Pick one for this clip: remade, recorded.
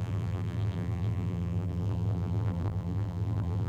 remade